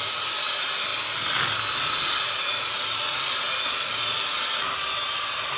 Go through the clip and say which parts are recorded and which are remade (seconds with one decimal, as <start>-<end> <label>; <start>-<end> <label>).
0.0-5.6 recorded